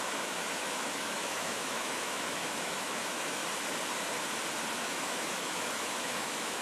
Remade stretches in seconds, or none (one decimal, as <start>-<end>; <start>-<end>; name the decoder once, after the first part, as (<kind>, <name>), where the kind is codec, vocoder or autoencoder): 0.0-3.4 (autoencoder, DAC-VAE); 4.8-6.6